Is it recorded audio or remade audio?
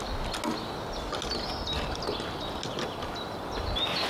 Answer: recorded